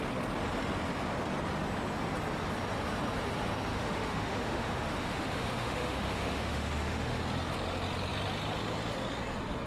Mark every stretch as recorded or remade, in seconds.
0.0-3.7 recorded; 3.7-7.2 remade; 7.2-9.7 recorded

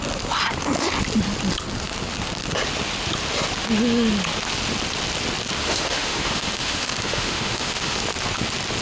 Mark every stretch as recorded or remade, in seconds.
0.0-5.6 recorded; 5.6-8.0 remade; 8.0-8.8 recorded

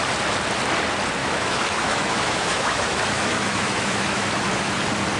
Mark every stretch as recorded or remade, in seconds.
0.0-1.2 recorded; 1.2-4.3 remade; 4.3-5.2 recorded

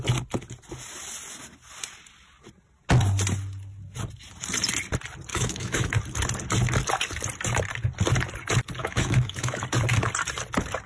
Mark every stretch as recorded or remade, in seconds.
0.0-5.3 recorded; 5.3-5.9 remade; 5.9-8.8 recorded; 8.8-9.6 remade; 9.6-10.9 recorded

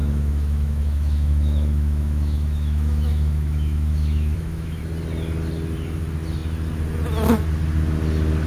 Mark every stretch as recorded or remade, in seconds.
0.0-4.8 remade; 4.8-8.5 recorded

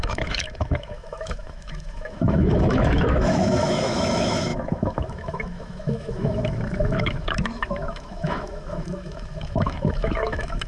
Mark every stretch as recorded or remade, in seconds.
0.0-10.7 remade